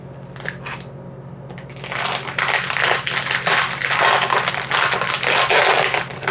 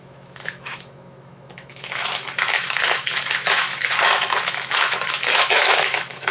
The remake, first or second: second